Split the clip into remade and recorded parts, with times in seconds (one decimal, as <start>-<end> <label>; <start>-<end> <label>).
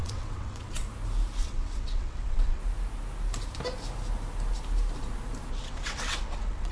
0.0-0.9 remade; 0.9-1.4 recorded; 1.4-2.6 remade; 2.6-5.5 recorded; 5.5-6.7 remade